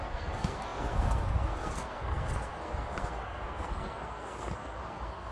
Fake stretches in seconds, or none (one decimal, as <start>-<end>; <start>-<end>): 0.0-5.3

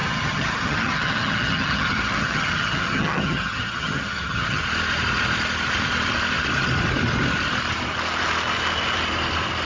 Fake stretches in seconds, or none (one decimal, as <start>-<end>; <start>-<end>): 0.0-4.6

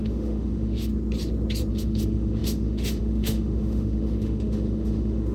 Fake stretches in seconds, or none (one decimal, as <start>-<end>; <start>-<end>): 0.0-0.9; 1.7-5.3

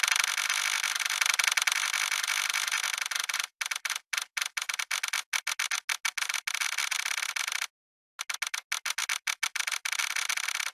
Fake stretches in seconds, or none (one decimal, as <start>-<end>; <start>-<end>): none

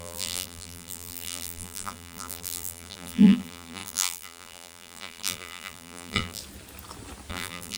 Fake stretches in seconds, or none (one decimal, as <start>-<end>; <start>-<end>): 0.0-6.4; 7.3-7.8

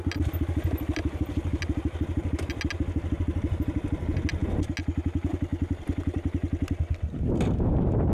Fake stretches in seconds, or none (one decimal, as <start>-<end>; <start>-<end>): none

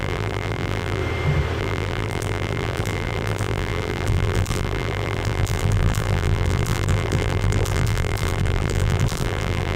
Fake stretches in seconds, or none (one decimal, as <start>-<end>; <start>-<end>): 0.0-1.0; 1.6-9.8

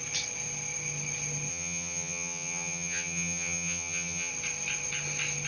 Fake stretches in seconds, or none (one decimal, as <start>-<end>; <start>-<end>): 1.5-4.3